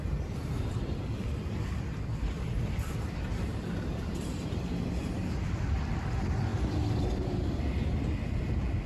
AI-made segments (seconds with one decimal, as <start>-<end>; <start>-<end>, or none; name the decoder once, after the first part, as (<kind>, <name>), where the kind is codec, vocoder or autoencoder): 0.0-2.5 (vocoder, BigVGAN v2); 5.3-6.5; 7.1-8.9